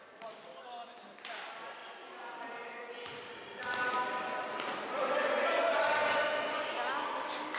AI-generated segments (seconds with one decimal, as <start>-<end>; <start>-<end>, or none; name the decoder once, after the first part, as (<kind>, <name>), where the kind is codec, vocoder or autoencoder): none